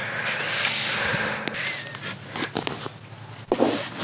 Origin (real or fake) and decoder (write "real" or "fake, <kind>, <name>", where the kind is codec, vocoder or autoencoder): real